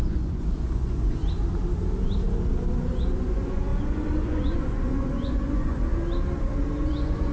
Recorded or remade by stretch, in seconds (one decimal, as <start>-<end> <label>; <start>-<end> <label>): 0.0-1.2 remade; 1.2-2.9 recorded; 2.9-5.8 remade; 5.8-6.8 recorded; 6.8-7.3 remade